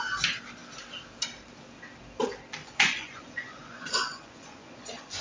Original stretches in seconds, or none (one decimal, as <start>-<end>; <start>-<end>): 0.0-2.6